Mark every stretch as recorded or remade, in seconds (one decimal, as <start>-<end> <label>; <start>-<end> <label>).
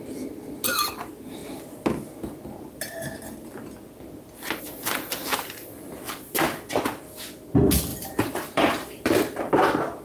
0.0-7.9 recorded; 7.9-9.4 remade; 9.4-10.0 recorded